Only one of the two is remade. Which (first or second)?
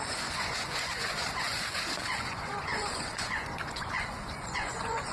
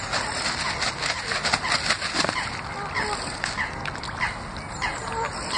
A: first